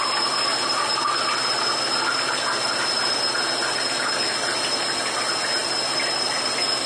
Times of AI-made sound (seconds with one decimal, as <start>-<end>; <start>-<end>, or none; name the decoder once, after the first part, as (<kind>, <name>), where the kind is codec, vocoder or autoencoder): 5.6-6.3 (vocoder, BigVGAN v2)